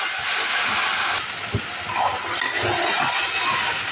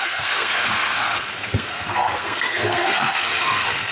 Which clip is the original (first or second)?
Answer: first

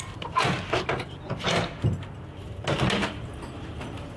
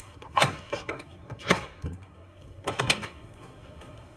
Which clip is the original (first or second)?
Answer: first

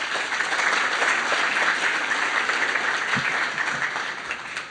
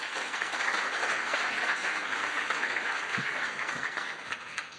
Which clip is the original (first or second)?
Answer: first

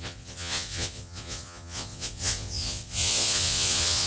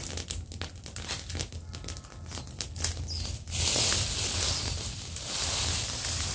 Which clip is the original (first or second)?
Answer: second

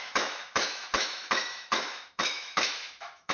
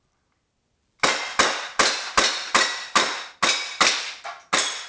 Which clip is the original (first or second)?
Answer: second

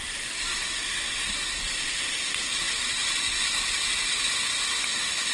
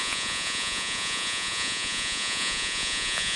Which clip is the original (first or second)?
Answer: first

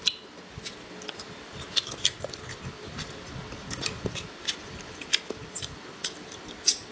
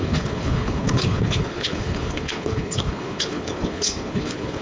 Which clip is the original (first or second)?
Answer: first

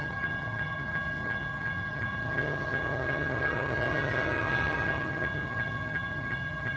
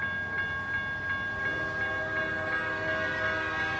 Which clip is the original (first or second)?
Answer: second